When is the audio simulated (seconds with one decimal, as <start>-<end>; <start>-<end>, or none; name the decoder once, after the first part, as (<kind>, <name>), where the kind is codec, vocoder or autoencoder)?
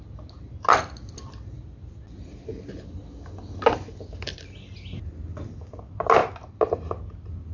none